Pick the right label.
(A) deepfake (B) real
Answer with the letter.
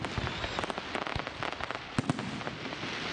B